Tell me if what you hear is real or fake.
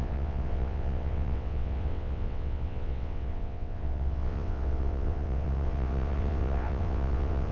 fake